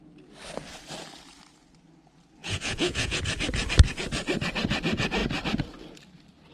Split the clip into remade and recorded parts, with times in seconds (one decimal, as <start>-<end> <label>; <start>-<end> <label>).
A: 0.0-2.4 recorded; 2.4-3.2 remade; 3.2-6.5 recorded